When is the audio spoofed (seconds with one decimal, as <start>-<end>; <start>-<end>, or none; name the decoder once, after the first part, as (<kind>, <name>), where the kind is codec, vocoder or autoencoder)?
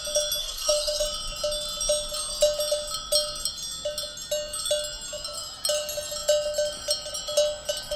0.4-1.0 (codec, SNAC)